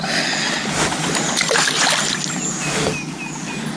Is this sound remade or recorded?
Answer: recorded